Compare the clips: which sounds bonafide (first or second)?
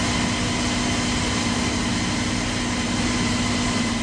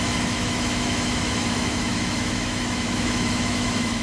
first